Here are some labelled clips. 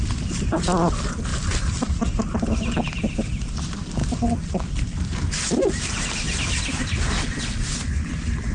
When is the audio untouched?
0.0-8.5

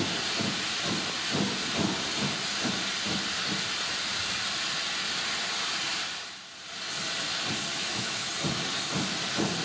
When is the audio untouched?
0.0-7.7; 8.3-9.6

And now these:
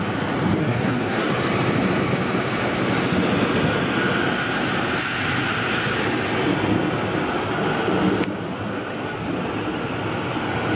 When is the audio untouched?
0.0-0.6; 1.3-10.8

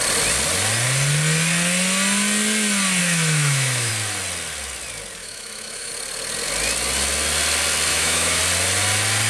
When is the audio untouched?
0.0-3.0; 3.9-5.2; 5.9-7.9; 8.4-9.3

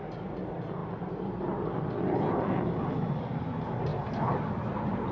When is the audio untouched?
0.0-5.1

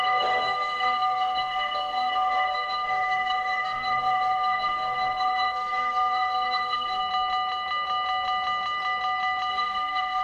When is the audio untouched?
7.0-9.5

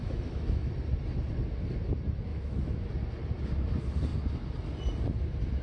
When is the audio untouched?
0.7-2.3; 2.9-5.6